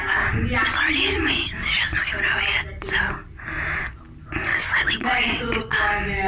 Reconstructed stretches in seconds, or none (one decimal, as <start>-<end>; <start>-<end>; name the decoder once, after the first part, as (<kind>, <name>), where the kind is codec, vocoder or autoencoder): 4.5-5.8 (vocoder, WaveNeXt)